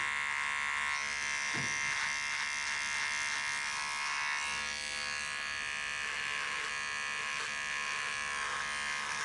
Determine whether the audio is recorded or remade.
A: recorded